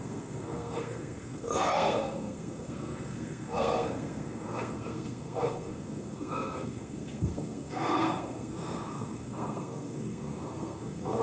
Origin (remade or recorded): remade